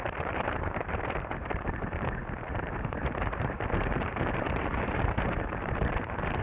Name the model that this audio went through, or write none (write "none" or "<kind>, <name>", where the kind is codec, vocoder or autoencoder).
vocoder, BigVGAN v2